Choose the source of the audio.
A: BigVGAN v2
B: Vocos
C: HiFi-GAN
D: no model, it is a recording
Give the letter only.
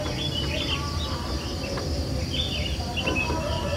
D